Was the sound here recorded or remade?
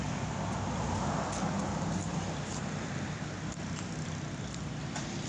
recorded